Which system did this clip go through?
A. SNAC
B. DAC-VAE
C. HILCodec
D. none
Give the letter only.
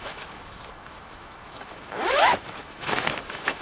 B